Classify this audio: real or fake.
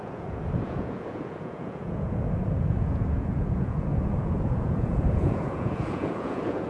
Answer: fake